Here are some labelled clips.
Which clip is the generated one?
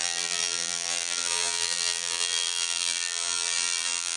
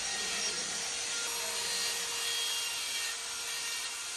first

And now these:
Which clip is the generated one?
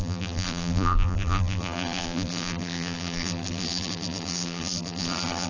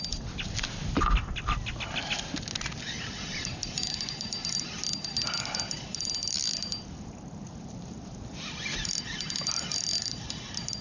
first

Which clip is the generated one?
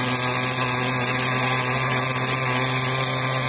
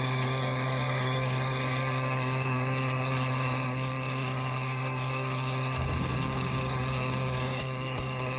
second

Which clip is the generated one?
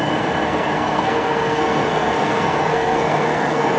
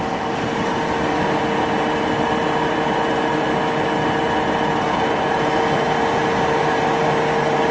first